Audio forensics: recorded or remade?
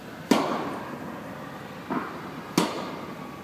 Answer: recorded